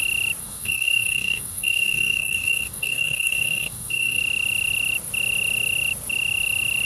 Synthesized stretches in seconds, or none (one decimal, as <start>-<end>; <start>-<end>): 0.4-4.2